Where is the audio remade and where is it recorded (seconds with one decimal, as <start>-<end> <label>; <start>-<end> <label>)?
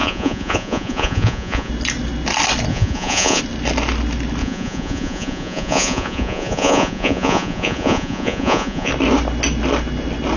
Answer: 0.0-1.7 remade; 1.7-2.7 recorded; 2.7-3.4 remade; 3.4-4.4 recorded; 4.4-8.9 remade; 8.9-10.4 recorded